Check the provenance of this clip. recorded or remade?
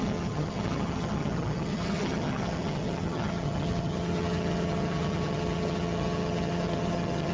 remade